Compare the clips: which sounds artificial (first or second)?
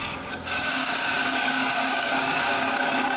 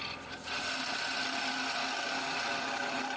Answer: first